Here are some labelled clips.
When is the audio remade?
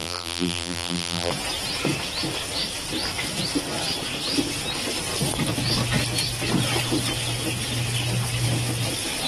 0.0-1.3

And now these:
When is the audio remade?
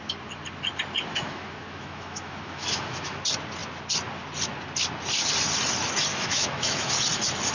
1.1-3.2; 6.1-6.9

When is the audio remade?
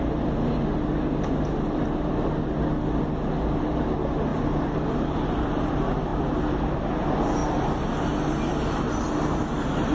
4.3-5.5; 6.1-6.8; 7.4-8.1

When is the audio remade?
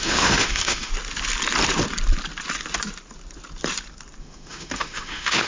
0.0-0.9; 4.2-5.5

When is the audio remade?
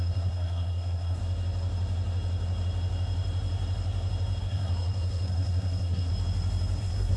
0.0-1.2; 4.4-6.1; 6.8-7.2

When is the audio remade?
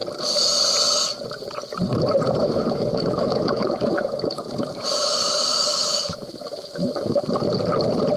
2.4-7.3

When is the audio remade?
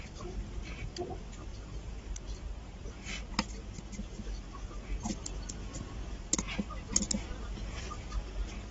1.5-2.9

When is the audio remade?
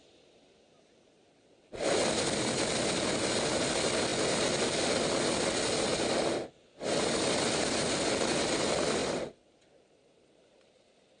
9.0-11.2